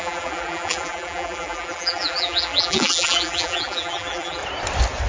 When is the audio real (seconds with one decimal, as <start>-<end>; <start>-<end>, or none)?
4.4-5.1